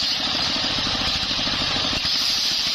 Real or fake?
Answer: fake